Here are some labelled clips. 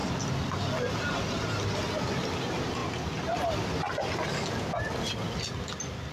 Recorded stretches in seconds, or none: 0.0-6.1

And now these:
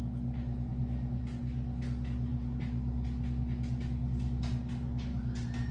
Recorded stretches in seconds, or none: 0.0-5.7